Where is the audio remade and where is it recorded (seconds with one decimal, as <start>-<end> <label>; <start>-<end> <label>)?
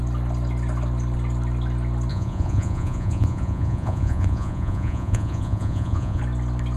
0.0-2.1 recorded; 2.1-6.2 remade; 6.2-6.8 recorded